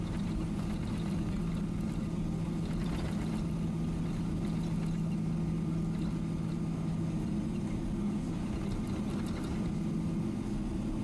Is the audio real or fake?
real